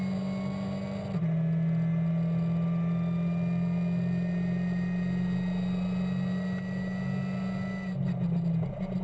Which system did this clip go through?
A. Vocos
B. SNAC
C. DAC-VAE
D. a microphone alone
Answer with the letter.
D